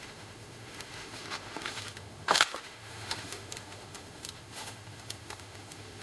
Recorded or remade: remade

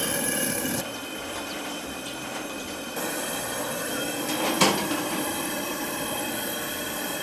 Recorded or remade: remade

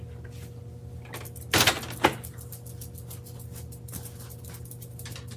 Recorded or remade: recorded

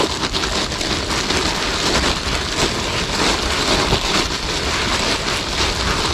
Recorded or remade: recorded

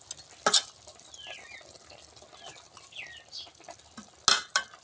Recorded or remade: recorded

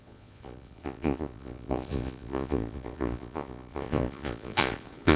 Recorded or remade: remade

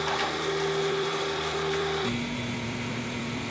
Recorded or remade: remade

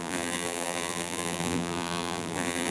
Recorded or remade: remade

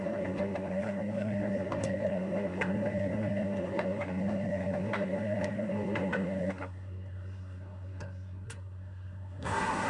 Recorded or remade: remade